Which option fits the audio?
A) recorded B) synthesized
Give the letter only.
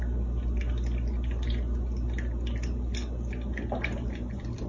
A